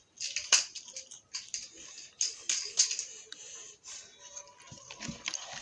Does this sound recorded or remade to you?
recorded